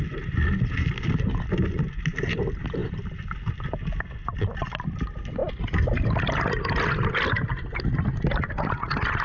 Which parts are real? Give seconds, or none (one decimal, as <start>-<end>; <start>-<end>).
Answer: 0.0-9.2